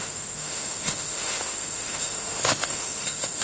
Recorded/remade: remade